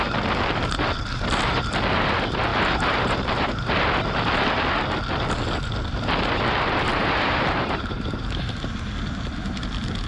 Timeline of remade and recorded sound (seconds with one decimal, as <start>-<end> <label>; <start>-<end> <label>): 0.0-2.5 recorded; 2.5-3.7 remade; 3.7-6.9 recorded; 6.9-8.4 remade; 8.4-10.1 recorded